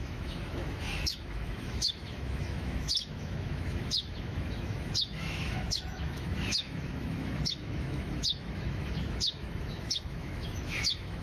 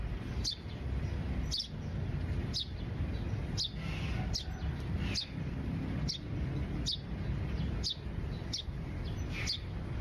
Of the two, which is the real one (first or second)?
second